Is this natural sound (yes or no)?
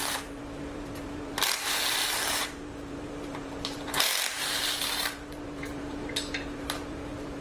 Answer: no